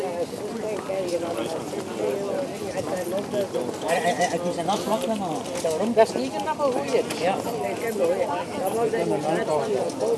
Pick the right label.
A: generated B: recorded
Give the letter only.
B